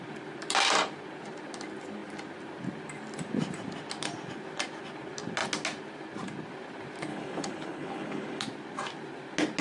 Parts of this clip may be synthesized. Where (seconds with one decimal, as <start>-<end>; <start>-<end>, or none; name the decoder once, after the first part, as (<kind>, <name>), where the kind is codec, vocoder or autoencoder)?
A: 7.1-8.4 (codec, HILCodec)